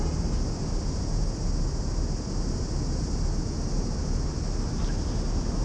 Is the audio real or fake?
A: real